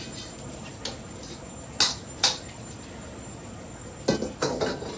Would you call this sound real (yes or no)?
yes